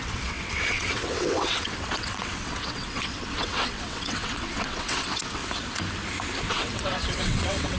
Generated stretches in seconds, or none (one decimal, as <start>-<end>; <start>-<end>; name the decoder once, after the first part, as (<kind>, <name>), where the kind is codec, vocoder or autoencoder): 0.0-5.4 (vocoder, WaveNeXt); 6.5-7.8